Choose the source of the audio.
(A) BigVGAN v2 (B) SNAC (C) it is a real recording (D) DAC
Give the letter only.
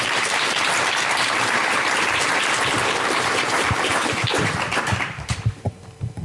A